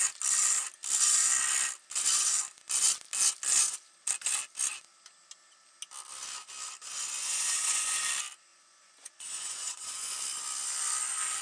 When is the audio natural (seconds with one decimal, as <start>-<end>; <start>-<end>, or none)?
0.0-7.2; 8.0-8.5; 10.1-11.4